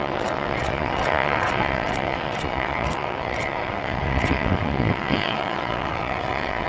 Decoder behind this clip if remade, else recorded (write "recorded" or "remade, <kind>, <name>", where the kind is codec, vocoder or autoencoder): remade, vocoder, WaveNeXt